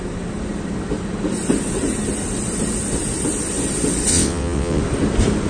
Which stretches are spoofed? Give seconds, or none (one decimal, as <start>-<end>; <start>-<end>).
4.1-4.8